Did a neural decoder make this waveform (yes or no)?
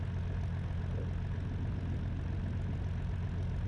no